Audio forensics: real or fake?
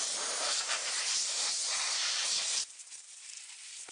fake